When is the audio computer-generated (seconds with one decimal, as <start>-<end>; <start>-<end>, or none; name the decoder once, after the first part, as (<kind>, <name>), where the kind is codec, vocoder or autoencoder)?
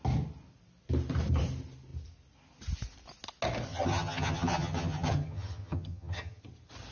3.7-6.4 (vocoder, HiFi-GAN)